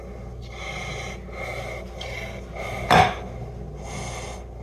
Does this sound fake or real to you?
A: real